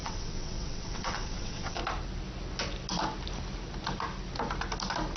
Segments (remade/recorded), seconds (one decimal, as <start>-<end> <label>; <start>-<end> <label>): 0.0-1.8 remade; 1.8-5.2 recorded